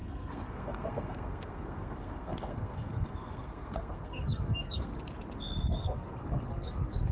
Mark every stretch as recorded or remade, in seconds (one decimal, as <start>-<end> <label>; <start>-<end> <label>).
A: 0.0-4.9 remade; 4.9-5.4 recorded; 5.4-7.1 remade